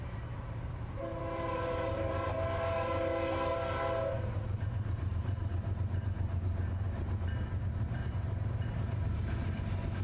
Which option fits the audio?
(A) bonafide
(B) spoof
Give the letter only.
B